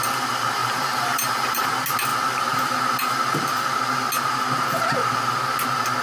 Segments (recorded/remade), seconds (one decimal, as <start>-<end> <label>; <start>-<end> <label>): 0.0-0.6 recorded; 0.6-1.7 remade; 1.7-6.0 recorded